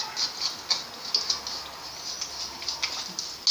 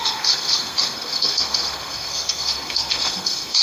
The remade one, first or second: second